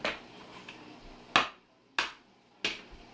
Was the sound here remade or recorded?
recorded